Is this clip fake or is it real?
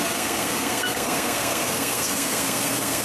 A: fake